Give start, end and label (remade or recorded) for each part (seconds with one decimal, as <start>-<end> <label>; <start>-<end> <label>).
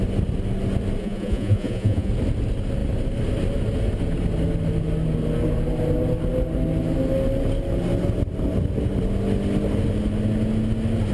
0.0-1.0 recorded; 1.0-2.1 remade; 2.1-11.1 recorded